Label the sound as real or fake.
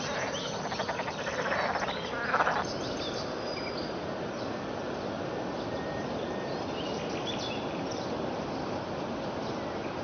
real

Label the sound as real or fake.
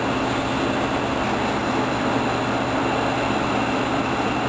real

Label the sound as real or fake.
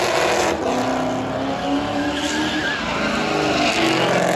real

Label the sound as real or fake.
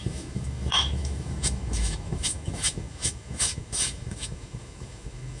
fake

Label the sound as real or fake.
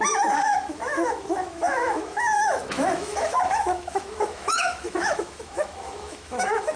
fake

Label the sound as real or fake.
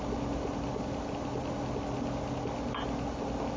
real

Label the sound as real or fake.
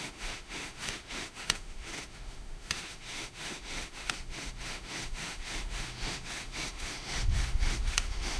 fake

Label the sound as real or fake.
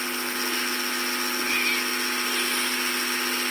real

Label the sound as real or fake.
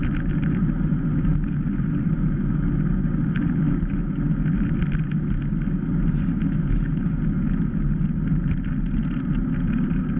real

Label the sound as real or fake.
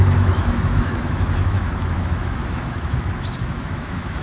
fake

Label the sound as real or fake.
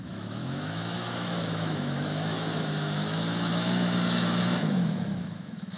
fake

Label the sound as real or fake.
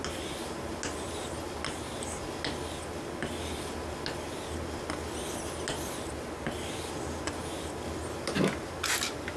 real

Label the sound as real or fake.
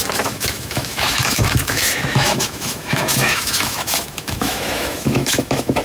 fake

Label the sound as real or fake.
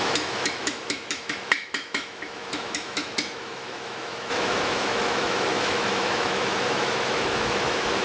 fake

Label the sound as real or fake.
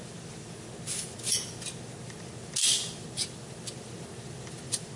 real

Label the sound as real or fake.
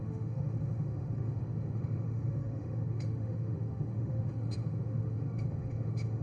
fake